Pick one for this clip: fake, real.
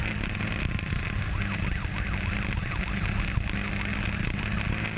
real